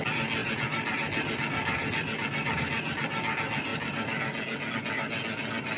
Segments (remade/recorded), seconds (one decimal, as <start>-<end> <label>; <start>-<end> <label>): 0.0-5.8 recorded